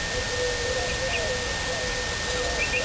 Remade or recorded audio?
recorded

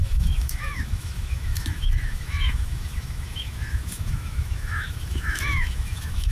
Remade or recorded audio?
remade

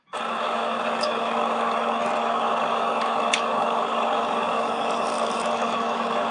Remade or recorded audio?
remade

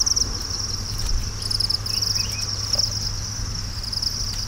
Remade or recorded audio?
recorded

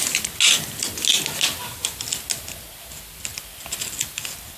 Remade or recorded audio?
recorded